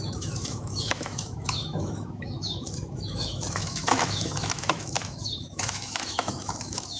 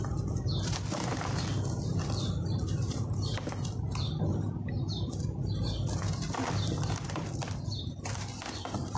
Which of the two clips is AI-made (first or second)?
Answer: first